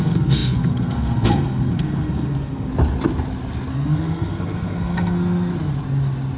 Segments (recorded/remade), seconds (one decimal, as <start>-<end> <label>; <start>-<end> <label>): 0.0-2.7 remade; 2.7-3.7 recorded; 3.7-5.5 remade; 5.5-6.4 recorded